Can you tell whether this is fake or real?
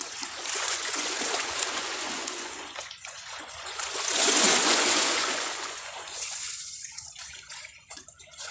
fake